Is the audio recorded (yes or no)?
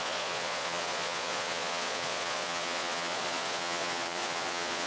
no